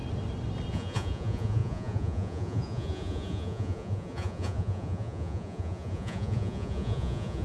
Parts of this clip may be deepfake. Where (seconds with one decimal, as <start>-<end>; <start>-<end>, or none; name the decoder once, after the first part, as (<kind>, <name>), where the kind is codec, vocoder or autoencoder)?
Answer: 0.7-7.4 (vocoder, Vocos)